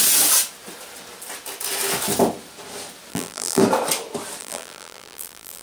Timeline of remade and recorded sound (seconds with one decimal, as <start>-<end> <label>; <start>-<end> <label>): 0.0-3.1 recorded; 3.1-3.6 remade; 3.6-4.4 recorded; 4.4-5.6 remade